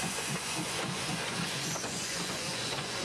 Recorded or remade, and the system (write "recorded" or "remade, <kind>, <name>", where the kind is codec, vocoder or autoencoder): remade, vocoder, Vocos